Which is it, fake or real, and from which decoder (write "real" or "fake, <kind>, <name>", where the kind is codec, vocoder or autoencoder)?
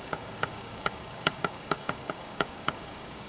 fake, codec, DAC